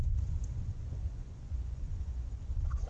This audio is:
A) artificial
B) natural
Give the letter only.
A